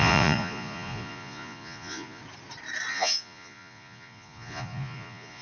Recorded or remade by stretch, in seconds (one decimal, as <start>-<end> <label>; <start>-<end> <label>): 0.0-2.2 remade; 2.2-2.9 recorded; 2.9-5.4 remade